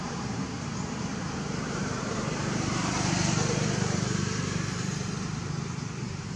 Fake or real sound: fake